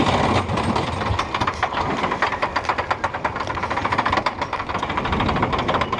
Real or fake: fake